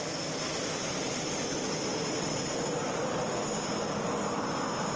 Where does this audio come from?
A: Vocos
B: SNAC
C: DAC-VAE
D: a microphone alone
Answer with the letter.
D